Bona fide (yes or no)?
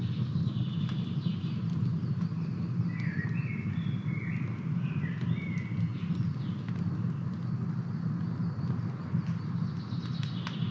yes